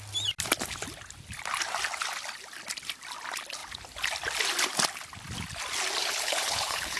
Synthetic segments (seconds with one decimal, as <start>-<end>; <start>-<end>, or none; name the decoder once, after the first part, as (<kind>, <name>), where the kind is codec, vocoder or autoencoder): 6.0-7.0 (codec, HILCodec)